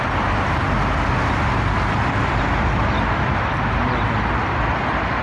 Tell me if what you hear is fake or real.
real